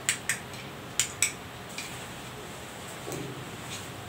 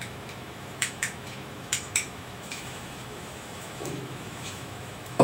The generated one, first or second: second